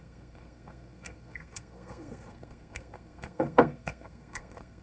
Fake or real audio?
fake